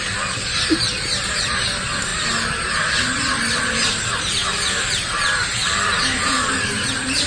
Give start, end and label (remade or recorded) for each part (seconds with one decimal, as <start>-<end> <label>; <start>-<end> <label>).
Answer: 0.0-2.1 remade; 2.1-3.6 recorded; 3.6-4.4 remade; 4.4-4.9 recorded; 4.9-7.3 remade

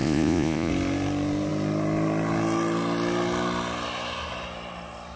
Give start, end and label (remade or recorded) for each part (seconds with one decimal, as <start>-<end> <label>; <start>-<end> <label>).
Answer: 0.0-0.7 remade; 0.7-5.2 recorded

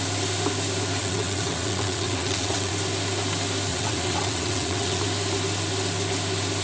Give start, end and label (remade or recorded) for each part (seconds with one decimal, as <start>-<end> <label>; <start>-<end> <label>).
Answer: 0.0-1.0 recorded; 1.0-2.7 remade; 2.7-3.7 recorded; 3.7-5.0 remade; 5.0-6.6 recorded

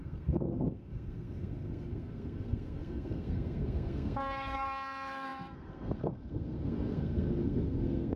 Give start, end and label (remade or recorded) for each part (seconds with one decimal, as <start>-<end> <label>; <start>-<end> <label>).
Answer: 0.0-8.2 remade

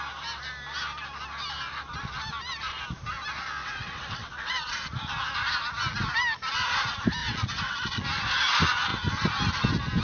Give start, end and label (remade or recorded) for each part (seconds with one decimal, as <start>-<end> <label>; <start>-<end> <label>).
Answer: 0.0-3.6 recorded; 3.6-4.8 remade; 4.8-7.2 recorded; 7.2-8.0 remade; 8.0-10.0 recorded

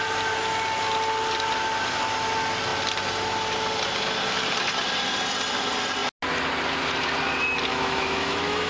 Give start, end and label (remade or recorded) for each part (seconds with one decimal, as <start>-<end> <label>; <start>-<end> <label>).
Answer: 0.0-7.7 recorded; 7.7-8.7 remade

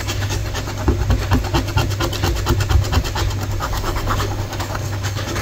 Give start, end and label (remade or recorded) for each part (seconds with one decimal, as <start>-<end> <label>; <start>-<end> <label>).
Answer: 0.0-0.4 remade; 0.4-3.6 recorded; 3.6-5.4 remade